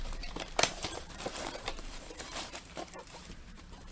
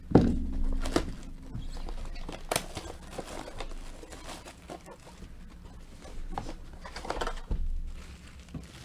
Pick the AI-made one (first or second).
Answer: first